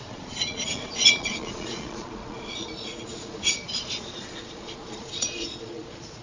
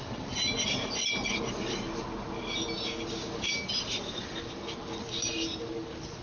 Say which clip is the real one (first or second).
second